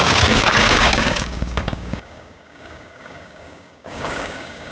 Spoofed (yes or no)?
yes